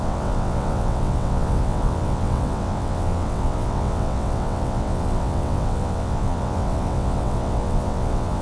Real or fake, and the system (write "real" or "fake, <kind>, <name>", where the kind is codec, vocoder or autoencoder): fake, vocoder, WaveNeXt